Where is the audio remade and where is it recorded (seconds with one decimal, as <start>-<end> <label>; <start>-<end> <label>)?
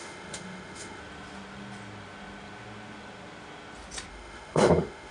0.0-1.0 remade; 1.0-4.1 recorded; 4.1-5.1 remade